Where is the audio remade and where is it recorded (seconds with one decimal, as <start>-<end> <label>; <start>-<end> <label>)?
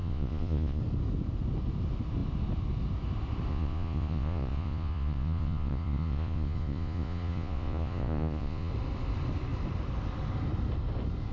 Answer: 0.0-0.8 remade; 0.8-3.5 recorded; 3.5-8.7 remade; 8.7-11.3 recorded